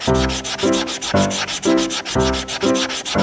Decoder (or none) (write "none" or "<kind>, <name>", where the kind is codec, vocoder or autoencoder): none